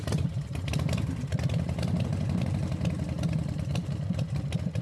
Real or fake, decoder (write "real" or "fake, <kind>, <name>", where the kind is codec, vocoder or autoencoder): fake, vocoder, BigVGAN v2